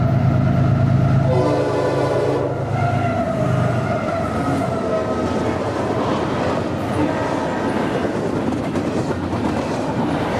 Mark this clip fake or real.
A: real